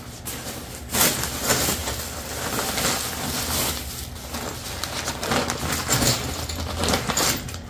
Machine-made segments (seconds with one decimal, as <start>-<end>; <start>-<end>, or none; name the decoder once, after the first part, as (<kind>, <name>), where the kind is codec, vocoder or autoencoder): none